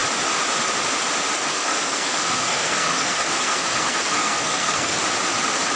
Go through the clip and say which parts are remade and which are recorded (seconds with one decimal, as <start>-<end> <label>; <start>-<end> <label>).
0.0-1.5 recorded; 1.5-5.0 remade; 5.0-5.8 recorded